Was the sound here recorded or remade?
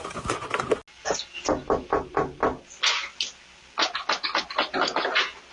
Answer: recorded